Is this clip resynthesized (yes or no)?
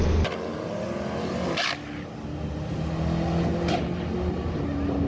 no